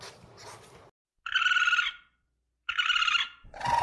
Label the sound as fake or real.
real